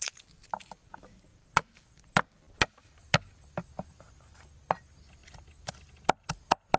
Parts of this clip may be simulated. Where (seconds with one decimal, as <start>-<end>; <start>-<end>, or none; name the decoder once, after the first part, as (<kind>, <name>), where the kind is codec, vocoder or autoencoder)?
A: 1.3-4.1 (vocoder, BigVGAN v2); 5.2-5.7